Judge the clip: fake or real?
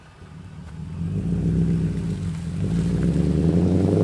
real